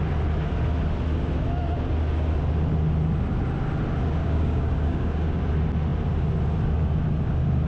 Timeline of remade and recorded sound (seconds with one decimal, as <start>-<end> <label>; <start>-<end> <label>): 0.0-4.2 recorded; 4.2-5.4 remade; 5.4-7.7 recorded